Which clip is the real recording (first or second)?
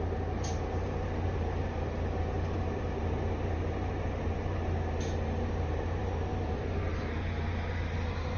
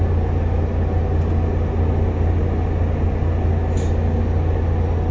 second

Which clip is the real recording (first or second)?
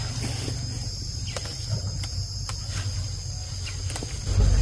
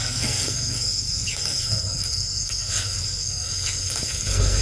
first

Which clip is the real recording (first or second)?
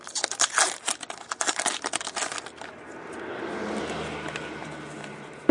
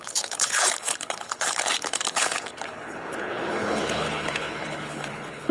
first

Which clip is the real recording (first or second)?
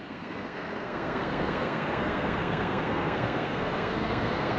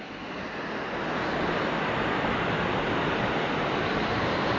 second